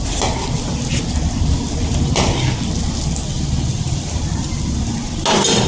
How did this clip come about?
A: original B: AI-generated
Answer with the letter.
A